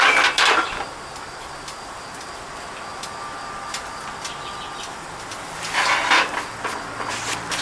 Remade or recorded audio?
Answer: recorded